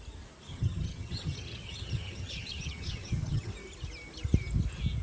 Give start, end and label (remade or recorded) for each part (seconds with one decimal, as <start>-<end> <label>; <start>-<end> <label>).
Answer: 0.0-0.5 recorded; 0.5-3.5 remade; 3.5-5.0 recorded